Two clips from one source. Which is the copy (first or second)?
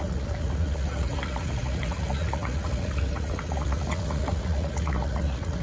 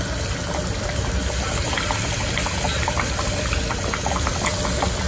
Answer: first